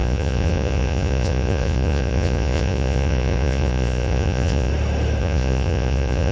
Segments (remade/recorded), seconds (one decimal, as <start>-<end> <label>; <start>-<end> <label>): 0.0-4.7 remade; 4.7-5.2 recorded; 5.2-6.3 remade